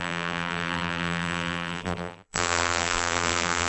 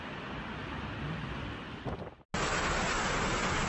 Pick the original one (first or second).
second